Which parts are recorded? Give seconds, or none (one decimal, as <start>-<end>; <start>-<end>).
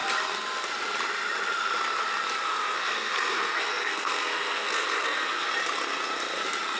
0.0-2.5; 5.5-6.8